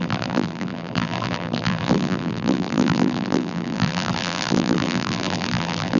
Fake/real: fake